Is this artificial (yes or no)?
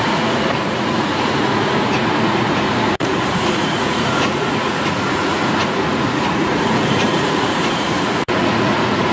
yes